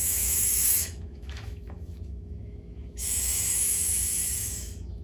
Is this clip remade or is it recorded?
remade